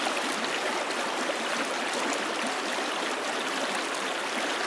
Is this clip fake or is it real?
real